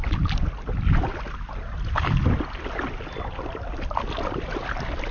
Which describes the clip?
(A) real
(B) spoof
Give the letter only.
A